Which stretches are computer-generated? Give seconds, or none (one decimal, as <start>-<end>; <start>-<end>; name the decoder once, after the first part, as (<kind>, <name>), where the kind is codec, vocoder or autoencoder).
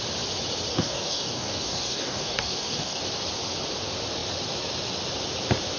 0.7-3.0 (codec, DAC)